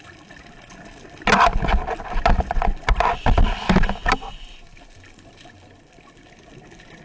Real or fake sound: real